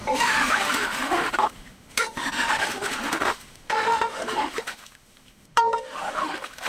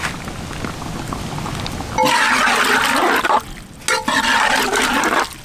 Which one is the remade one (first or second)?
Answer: first